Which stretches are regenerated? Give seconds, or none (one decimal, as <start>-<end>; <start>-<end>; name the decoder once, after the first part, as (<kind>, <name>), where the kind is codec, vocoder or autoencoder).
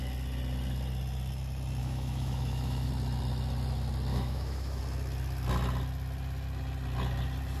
1.8-2.9 (autoencoder, DAC-VAE); 4.1-4.8